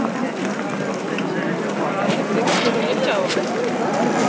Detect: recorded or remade recorded